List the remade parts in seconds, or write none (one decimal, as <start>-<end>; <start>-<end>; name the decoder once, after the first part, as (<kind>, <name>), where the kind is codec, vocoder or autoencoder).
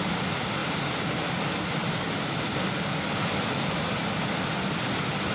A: 0.6-3.1 (vocoder, BigVGAN v2); 4.0-5.3